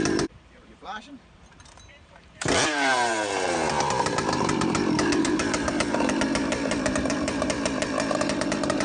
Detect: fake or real fake